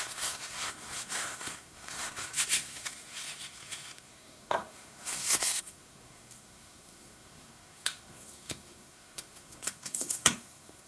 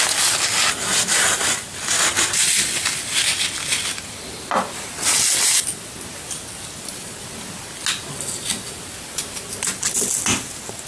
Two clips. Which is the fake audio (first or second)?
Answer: first